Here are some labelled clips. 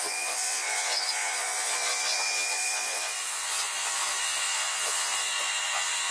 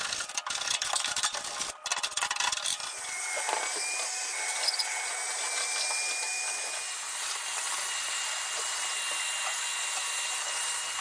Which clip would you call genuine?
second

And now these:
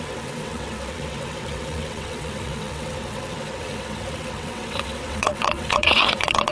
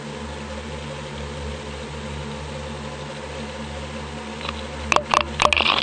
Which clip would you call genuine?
second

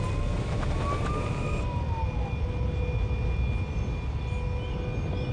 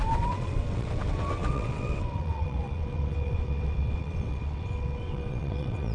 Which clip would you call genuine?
first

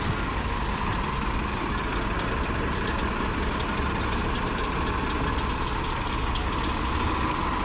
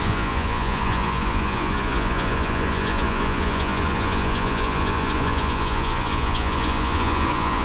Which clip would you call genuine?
first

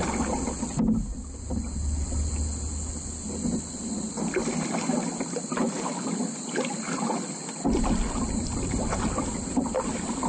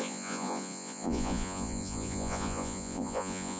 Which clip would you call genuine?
first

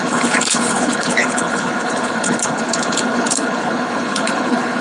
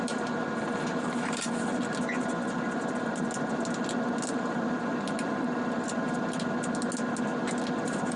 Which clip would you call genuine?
second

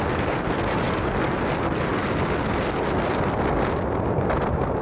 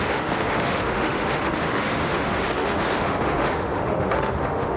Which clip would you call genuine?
first